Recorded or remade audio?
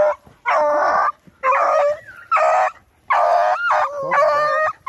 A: recorded